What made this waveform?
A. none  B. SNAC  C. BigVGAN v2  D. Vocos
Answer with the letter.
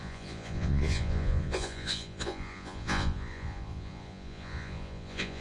D